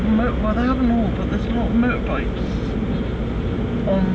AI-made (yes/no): no